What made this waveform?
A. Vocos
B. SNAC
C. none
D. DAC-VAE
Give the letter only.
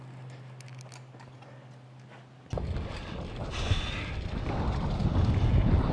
C